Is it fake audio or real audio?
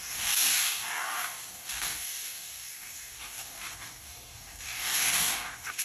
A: fake